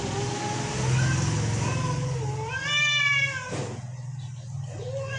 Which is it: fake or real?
real